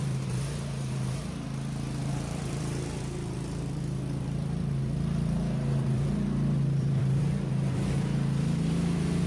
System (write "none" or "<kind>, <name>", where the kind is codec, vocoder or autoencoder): vocoder, BigVGAN v2